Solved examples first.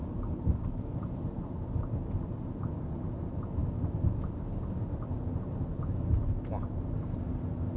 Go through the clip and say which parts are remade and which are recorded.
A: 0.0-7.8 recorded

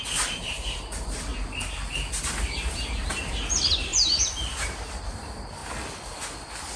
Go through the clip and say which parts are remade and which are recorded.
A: 0.0-1.3 remade; 1.3-2.1 recorded; 2.1-5.6 remade; 5.6-6.8 recorded

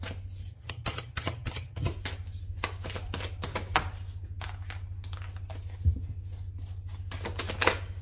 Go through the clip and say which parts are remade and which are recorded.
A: 0.0-0.5 recorded; 0.5-1.9 remade; 1.9-8.0 recorded

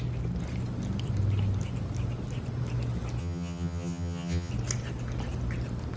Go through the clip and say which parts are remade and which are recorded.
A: 0.0-3.2 recorded; 3.2-4.5 remade; 4.5-6.0 recorded